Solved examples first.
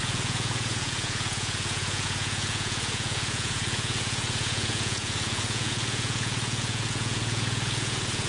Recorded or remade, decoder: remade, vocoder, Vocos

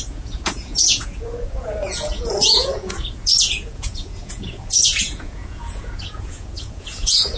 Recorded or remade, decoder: remade, vocoder, Vocos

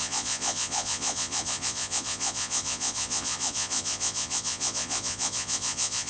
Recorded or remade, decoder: remade, vocoder, Vocos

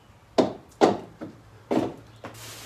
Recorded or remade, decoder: recorded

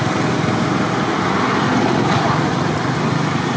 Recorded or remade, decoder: recorded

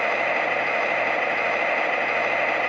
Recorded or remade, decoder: recorded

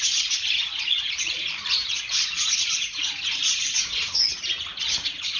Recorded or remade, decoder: remade, vocoder, Vocos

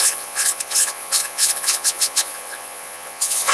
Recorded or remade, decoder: remade, vocoder, Vocos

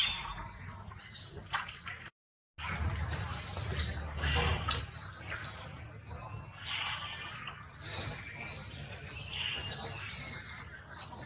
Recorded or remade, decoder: recorded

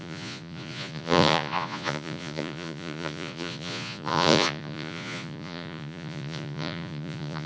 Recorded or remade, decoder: remade, vocoder, Vocos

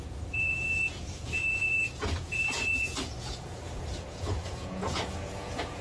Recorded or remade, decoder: remade, vocoder, Vocos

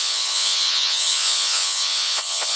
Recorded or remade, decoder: remade, vocoder, Vocos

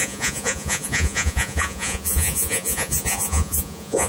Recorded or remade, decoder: remade, vocoder, Vocos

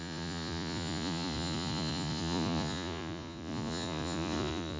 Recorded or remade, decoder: remade, vocoder, Vocos